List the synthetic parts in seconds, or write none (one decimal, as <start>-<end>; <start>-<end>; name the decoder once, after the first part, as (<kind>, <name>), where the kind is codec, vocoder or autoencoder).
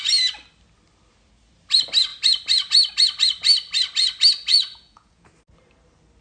4.5-5.3 (vocoder, Vocos)